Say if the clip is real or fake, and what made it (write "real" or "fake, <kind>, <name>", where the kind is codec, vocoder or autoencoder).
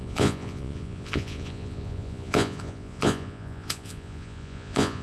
fake, vocoder, Vocos